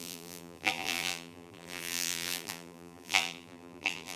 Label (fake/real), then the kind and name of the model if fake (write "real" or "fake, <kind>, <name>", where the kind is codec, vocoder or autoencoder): fake, vocoder, BigVGAN v2